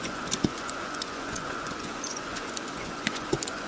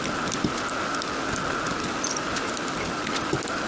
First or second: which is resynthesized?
first